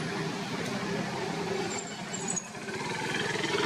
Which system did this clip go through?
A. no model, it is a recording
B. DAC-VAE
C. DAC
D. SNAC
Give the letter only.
A